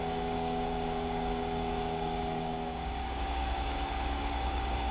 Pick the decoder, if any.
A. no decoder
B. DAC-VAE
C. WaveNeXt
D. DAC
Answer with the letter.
D